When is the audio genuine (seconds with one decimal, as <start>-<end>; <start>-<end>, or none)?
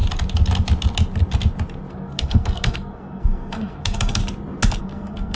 0.0-1.9; 4.2-4.8